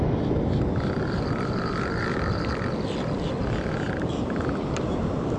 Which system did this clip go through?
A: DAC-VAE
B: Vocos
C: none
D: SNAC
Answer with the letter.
C